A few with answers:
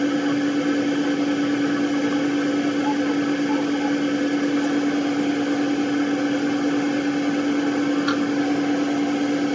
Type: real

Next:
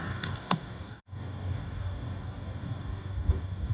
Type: fake